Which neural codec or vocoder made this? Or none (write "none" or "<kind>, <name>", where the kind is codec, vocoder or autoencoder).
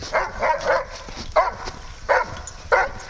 none